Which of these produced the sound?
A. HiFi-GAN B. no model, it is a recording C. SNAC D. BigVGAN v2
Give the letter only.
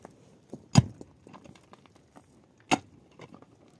B